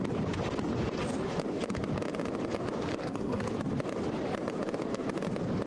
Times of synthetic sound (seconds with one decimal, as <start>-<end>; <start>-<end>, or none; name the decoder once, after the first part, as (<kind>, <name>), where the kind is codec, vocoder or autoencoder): 3.0-3.5 (codec, SNAC)